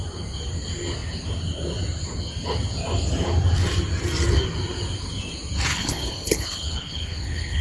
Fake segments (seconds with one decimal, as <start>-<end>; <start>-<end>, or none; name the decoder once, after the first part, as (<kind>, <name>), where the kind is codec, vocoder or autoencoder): 5.7-7.6 (codec, HILCodec)